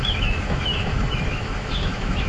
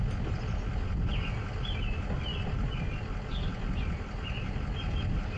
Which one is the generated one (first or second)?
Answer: first